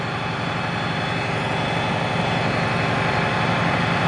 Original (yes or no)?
yes